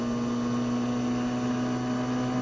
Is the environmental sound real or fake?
real